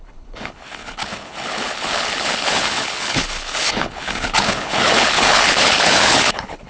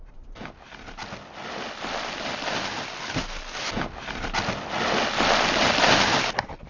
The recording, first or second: second